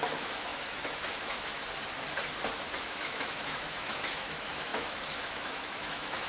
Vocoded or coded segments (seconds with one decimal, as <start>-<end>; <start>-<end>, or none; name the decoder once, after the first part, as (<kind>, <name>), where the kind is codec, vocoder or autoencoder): 0.0-1.6 (autoencoder, DAC-VAE); 2.8-6.3

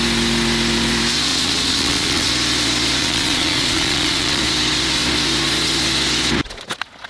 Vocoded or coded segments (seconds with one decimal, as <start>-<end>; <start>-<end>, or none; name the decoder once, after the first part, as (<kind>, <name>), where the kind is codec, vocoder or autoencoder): 1.3-2.3 (vocoder, Vocos); 3.0-4.4

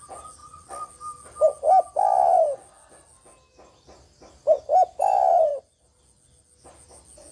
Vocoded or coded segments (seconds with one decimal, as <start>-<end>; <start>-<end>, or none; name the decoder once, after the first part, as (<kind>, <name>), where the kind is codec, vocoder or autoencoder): 0.4-0.9 (vocoder, Vocos)

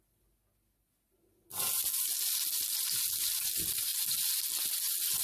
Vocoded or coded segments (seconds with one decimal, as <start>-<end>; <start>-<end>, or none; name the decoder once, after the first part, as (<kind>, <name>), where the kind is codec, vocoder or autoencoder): none